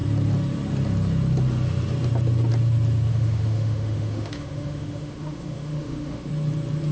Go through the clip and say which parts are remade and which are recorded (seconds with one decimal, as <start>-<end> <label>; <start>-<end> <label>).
0.0-3.1 recorded; 3.1-6.3 remade; 6.3-6.9 recorded